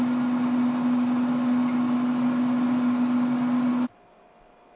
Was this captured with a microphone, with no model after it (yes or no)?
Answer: yes